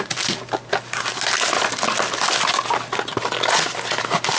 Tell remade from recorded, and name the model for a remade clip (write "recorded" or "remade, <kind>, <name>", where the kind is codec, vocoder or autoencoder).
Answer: recorded